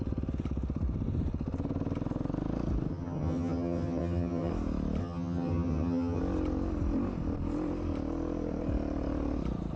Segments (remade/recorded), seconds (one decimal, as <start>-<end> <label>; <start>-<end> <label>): 0.0-2.9 recorded; 2.9-4.5 remade; 4.5-5.0 recorded; 5.0-6.2 remade; 6.2-9.8 recorded